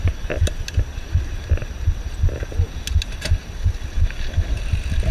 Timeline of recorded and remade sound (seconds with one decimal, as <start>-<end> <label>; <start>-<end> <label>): 0.0-5.1 recorded